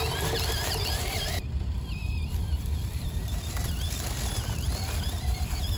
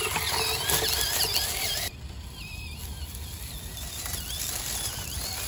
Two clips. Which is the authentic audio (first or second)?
second